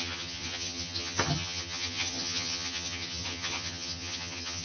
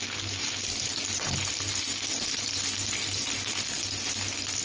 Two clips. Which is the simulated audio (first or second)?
first